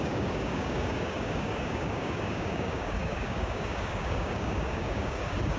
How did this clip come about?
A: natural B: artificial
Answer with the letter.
B